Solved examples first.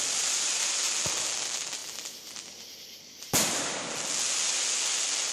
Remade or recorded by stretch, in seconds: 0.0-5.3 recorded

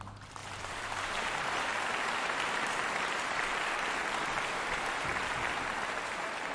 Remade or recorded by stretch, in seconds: 0.0-1.7 remade; 1.7-2.2 recorded; 2.2-3.5 remade; 3.5-4.5 recorded; 4.5-5.1 remade; 5.1-5.7 recorded; 5.7-6.5 remade